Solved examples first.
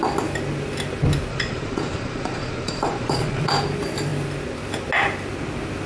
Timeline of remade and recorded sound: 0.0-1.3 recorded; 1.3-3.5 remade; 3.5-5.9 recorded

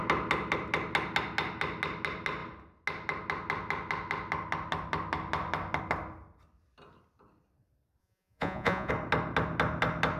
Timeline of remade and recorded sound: 0.0-8.0 recorded; 8.0-8.9 remade; 8.9-10.2 recorded